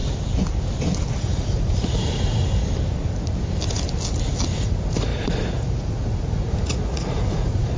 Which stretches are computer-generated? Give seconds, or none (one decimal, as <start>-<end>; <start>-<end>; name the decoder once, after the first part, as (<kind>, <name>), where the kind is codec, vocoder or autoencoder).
1.2-2.4 (vocoder, Vocos); 4.5-7.8